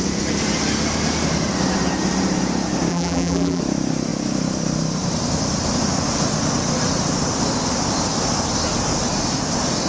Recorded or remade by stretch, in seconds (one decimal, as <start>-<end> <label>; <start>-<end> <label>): 0.0-2.9 recorded; 2.9-3.6 remade; 3.6-9.9 recorded